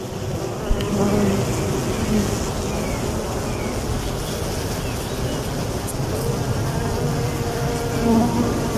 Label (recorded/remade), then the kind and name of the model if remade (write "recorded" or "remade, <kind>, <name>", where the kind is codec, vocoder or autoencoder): recorded